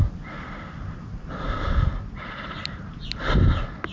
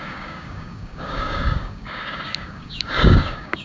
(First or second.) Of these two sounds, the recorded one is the first